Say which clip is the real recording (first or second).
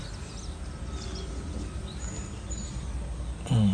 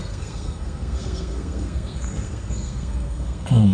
first